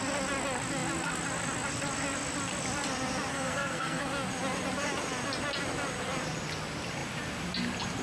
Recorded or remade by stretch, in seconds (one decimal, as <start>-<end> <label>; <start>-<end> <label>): 0.0-3.3 recorded; 3.3-4.1 remade; 4.1-8.0 recorded